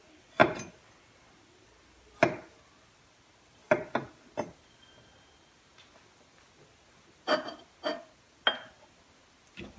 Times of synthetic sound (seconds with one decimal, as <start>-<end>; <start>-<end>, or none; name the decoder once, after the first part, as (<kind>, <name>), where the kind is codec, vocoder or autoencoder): none